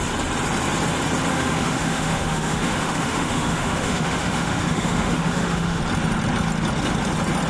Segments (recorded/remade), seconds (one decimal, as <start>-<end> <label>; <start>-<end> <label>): 0.0-1.3 recorded; 1.3-5.8 remade; 5.8-7.5 recorded